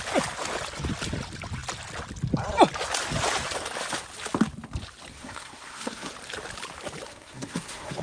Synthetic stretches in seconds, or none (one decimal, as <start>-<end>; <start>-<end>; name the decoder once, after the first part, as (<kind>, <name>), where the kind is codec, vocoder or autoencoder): 5.1-6.1 (codec, SNAC); 7.1-8.0